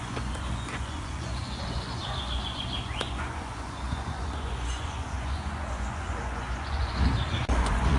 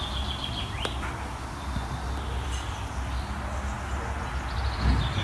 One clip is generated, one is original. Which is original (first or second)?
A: second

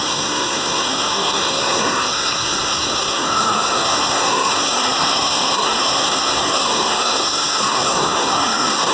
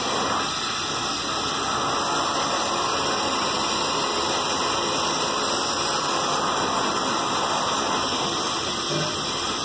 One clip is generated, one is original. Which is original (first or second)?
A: second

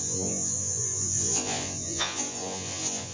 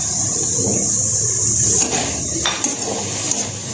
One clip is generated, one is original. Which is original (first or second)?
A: second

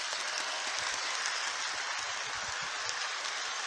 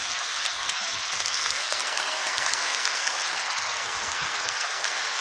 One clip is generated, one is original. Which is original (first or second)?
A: first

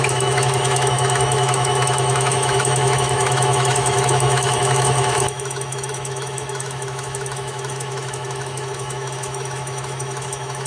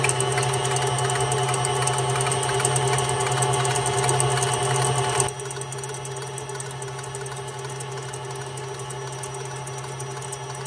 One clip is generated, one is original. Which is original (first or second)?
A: second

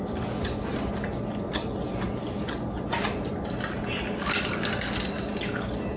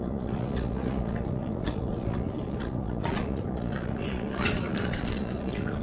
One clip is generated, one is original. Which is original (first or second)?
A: first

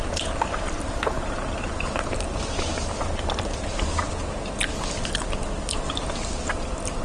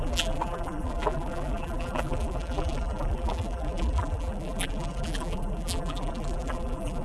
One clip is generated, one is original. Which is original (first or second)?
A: first